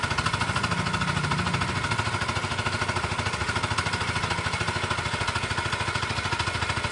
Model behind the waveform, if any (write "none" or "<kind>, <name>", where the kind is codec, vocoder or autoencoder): none